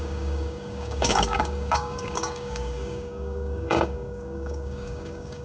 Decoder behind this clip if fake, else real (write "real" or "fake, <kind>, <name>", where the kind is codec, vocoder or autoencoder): fake, codec, DAC